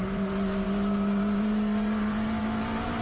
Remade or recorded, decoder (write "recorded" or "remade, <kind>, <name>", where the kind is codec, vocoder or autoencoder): remade, vocoder, BigVGAN v2